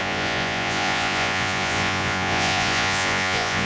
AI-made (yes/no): yes